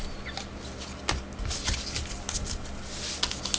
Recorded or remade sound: recorded